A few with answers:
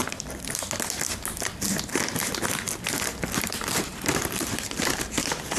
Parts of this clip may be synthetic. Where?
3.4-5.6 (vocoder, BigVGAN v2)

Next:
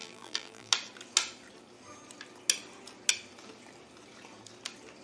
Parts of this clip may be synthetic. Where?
0.0-0.7 (vocoder, BigVGAN v2)

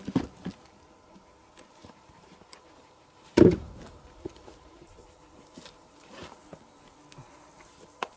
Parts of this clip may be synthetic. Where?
1.8-6.3 (vocoder, BigVGAN v2)